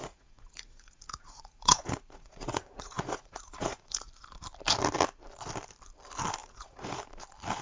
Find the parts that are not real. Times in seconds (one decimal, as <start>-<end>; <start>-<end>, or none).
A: 0.0-4.1; 6.4-7.0